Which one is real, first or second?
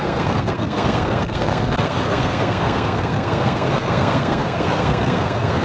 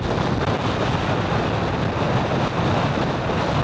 second